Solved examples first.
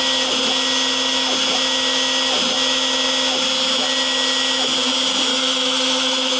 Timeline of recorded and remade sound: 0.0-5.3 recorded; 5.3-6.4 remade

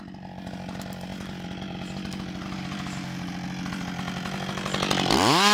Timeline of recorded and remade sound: 0.0-5.5 recorded